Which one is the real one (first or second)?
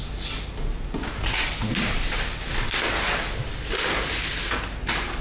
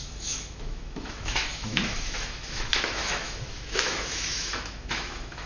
first